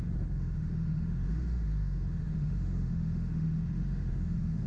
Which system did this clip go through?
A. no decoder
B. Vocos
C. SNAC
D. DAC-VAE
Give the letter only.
D